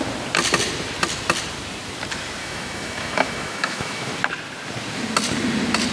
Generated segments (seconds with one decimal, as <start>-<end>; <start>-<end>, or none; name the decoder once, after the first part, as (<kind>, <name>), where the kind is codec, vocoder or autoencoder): 2.4-4.1 (autoencoder, DAC-VAE)